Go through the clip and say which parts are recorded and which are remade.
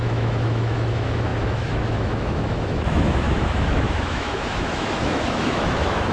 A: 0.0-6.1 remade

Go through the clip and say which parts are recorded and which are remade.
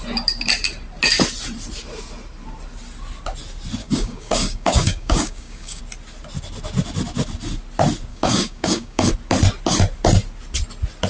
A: 0.0-3.8 recorded; 3.8-5.8 remade; 5.8-8.1 recorded; 8.1-9.1 remade; 9.1-11.1 recorded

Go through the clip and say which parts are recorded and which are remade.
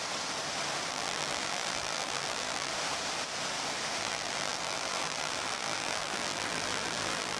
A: 0.0-0.9 recorded; 0.9-2.7 remade; 2.7-4.0 recorded; 4.0-7.4 remade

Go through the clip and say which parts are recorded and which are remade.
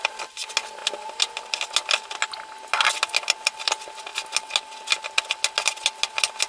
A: 0.0-6.5 recorded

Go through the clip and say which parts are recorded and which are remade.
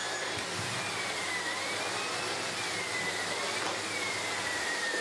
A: 0.0-5.0 recorded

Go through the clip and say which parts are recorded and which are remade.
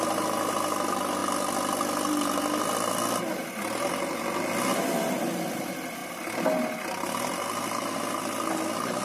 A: 0.0-9.0 recorded